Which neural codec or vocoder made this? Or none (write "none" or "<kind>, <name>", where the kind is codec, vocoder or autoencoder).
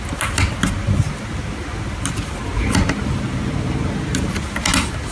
none